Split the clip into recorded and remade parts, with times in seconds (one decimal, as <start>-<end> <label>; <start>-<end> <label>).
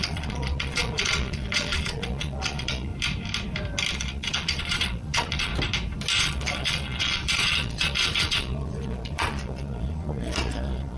0.0-2.9 remade; 2.9-3.9 recorded; 3.9-5.5 remade; 5.5-6.2 recorded; 6.2-11.0 remade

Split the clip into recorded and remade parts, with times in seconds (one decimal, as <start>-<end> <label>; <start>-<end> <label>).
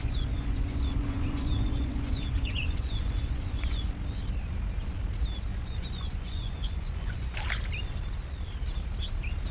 0.0-3.9 remade; 3.9-5.5 recorded; 5.5-7.4 remade; 7.4-9.5 recorded